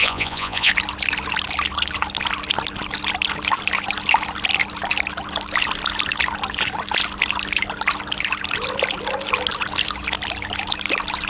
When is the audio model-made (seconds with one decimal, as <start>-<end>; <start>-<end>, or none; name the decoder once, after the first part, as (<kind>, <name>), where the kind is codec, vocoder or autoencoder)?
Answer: 0.0-0.7 (vocoder, Vocos)